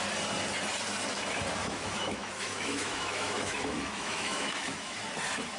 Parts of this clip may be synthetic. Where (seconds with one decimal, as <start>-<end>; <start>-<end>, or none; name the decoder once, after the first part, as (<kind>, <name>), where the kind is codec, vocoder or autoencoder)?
1.6-5.0 (autoencoder, DAC-VAE)